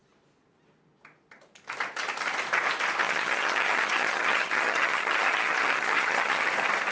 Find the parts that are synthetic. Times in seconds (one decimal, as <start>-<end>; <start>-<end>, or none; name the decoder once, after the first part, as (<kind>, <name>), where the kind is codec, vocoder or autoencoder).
3.0-6.5 (vocoder, HiFi-GAN)